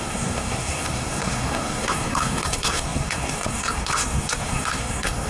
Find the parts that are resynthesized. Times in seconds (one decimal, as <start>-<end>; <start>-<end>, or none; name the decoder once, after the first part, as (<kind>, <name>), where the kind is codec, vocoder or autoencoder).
0.0-5.3 (codec, SNAC)

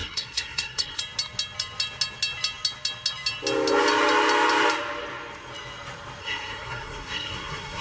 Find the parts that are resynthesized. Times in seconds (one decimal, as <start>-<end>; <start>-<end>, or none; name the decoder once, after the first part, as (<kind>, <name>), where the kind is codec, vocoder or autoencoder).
0.0-1.0 (codec, SNAC); 6.2-7.8